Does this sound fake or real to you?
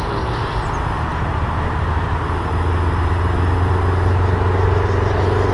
real